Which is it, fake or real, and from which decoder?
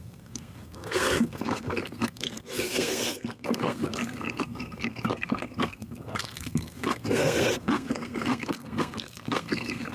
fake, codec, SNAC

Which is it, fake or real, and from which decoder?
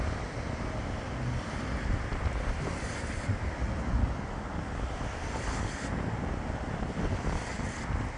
real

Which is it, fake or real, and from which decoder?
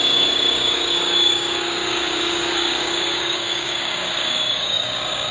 fake, codec, DAC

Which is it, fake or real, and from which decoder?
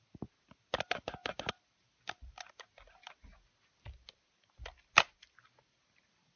real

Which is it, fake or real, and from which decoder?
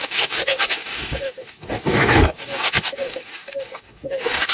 fake, codec, DAC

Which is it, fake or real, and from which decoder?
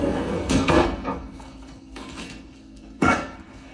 fake, codec, SNAC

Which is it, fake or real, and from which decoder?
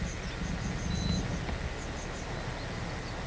real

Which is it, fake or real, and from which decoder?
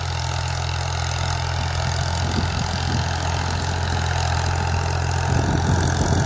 real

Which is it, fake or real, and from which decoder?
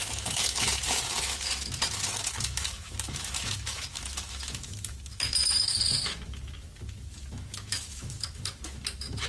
fake, autoencoder, DAC-VAE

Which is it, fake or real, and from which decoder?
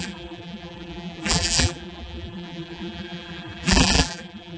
fake, vocoder, BigVGAN v2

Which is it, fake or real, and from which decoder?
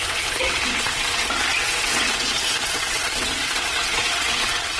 fake, vocoder, WaveNeXt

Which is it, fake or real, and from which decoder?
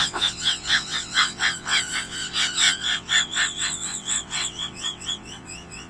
fake, vocoder, WaveNeXt